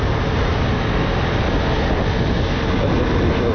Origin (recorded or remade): recorded